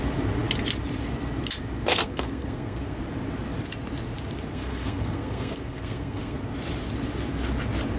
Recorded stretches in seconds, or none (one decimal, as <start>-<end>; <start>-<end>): 0.0-1.9; 3.0-4.5; 6.4-8.0